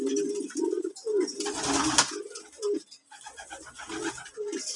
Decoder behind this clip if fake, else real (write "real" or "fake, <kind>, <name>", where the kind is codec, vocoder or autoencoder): real